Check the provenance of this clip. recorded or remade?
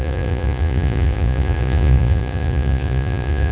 remade